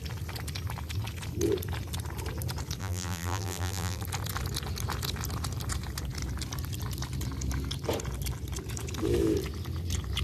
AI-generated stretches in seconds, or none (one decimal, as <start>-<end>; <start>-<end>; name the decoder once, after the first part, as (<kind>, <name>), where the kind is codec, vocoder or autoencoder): 2.8-4.0 (vocoder, BigVGAN v2)